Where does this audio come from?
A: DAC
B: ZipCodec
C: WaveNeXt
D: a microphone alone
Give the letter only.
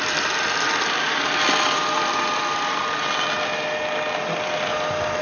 D